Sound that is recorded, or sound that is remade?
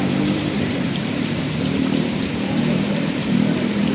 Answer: remade